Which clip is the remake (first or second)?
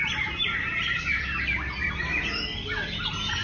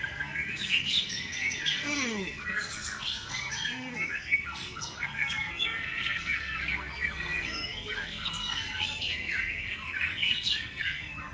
second